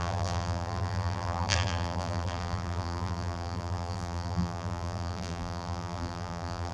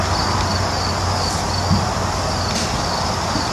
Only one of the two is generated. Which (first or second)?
first